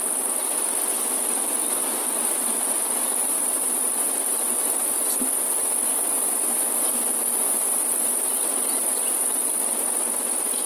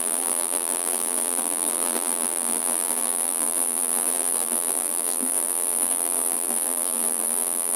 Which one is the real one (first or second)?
first